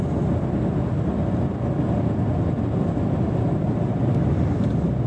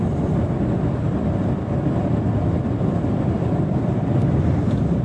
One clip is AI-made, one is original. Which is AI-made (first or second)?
second